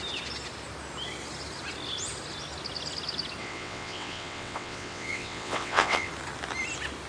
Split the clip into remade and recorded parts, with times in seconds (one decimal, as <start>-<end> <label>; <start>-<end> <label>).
0.0-3.4 recorded; 3.4-6.1 remade; 6.1-7.1 recorded